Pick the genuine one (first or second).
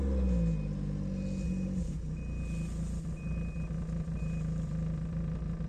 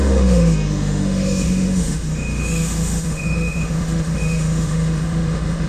first